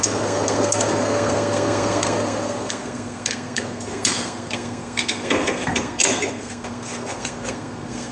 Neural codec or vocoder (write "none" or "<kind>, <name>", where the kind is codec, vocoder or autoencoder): codec, SNAC